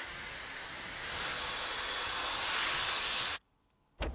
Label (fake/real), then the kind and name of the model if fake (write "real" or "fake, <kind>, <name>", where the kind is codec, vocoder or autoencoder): real